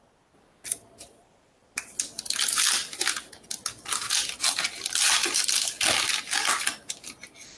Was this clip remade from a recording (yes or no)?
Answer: no